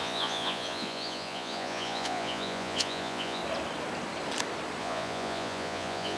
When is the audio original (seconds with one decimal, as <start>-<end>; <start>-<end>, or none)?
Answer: 3.4-4.8